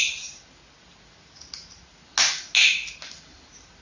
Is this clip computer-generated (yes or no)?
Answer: no